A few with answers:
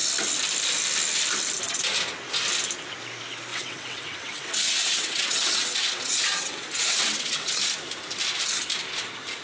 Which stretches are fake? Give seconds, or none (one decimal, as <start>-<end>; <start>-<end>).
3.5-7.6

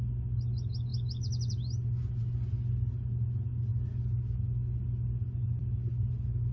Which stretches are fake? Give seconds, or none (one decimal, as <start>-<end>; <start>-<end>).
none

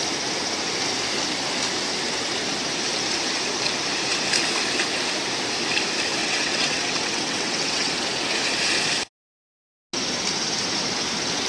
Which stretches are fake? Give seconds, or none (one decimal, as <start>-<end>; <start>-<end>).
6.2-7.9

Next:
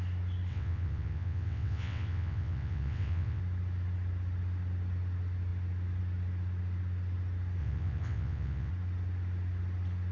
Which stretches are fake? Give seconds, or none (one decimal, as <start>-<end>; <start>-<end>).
0.5-3.4; 7.6-8.7

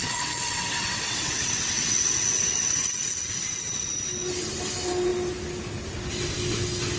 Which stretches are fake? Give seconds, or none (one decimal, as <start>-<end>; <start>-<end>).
0.0-3.9

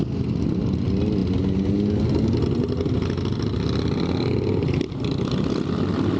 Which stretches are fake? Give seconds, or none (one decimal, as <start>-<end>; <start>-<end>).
none

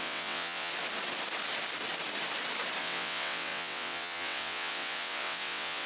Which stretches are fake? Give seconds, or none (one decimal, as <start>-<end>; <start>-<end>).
0.0-0.7; 2.8-5.9